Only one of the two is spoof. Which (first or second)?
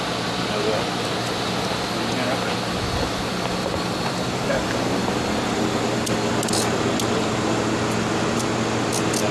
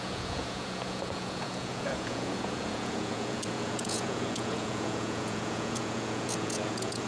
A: second